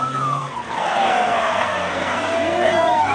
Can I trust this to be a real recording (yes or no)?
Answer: no